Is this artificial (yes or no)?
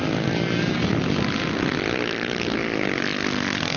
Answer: no